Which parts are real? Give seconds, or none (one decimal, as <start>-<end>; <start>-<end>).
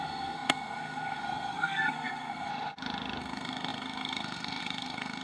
2.5-3.2